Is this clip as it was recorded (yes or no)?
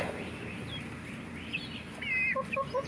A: yes